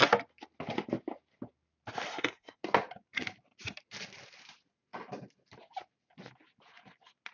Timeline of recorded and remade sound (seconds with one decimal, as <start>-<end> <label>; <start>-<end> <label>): 0.0-2.1 recorded; 2.1-2.6 remade; 2.6-7.3 recorded